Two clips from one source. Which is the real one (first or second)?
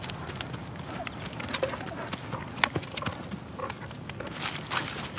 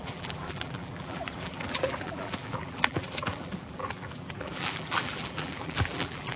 first